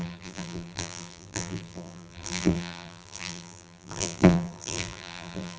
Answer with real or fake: fake